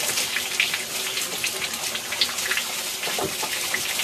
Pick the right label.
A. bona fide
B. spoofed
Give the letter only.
A